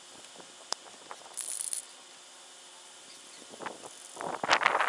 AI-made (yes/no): no